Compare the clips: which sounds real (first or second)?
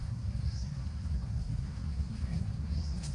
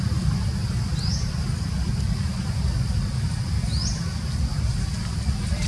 second